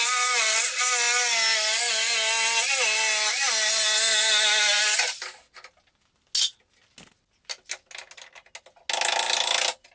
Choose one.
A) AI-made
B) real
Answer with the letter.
B